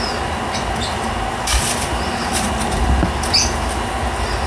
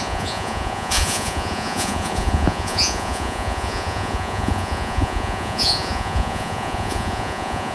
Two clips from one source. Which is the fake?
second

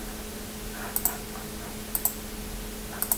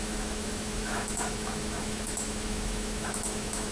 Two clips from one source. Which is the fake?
second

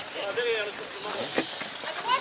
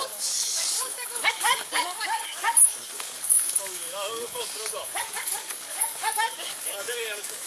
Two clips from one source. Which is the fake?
second